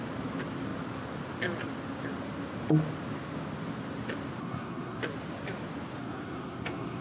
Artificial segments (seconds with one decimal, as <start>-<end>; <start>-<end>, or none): 4.4-5.0; 6.0-7.0